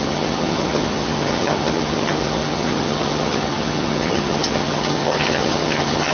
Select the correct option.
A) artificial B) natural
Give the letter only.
A